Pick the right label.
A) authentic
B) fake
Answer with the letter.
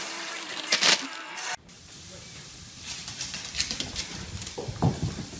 B